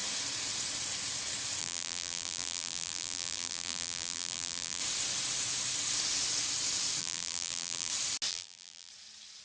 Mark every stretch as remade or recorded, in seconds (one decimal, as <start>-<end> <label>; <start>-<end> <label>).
0.0-1.6 recorded; 1.6-4.8 remade; 4.8-7.0 recorded; 7.0-7.9 remade; 7.9-8.3 recorded; 8.3-8.9 remade; 8.9-9.4 recorded